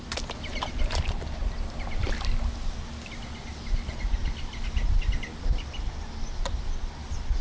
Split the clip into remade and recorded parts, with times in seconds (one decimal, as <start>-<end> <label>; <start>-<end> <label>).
0.0-7.4 recorded